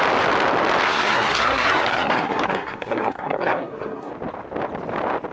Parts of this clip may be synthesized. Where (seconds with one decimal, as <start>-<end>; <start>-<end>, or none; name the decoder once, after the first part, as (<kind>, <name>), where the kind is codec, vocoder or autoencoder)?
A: 0.9-4.1 (codec, SNAC)